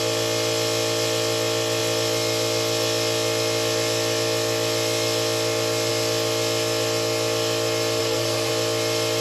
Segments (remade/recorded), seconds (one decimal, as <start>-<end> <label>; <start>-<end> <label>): 0.0-8.0 recorded; 8.0-8.5 remade; 8.5-9.2 recorded